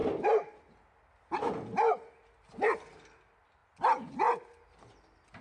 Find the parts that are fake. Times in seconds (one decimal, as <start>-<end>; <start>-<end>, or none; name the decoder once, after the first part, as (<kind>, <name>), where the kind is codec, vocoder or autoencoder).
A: none